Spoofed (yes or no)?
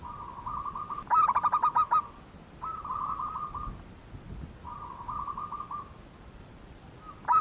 no